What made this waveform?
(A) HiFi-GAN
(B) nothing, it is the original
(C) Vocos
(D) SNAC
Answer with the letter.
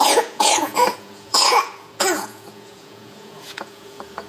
C